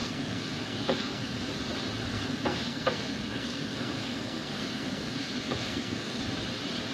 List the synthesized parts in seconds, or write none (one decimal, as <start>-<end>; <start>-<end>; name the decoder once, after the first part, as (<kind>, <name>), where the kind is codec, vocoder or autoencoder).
0.0-1.5 (codec, SNAC); 2.1-6.2